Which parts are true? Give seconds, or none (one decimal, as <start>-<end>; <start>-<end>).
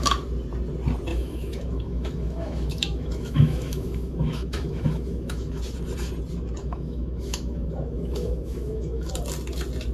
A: 0.0-1.1; 5.6-6.6; 9.1-9.9